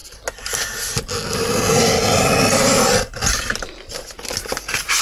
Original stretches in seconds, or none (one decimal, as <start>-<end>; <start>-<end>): 0.0-3.5; 4.2-5.0